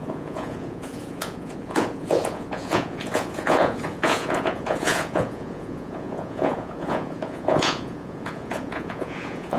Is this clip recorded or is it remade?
remade